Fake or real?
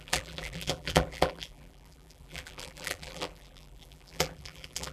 fake